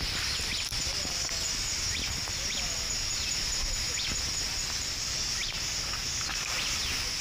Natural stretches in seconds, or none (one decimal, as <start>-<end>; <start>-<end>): 0.0-7.2